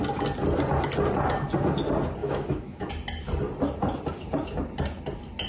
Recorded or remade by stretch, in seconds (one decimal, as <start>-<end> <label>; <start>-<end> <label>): 0.0-2.2 recorded; 2.2-2.9 remade; 2.9-5.5 recorded